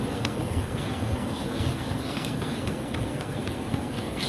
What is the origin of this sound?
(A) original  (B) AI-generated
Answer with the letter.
B